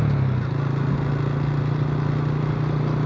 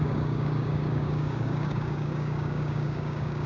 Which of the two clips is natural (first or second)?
first